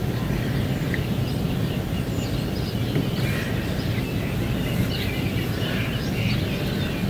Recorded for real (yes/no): yes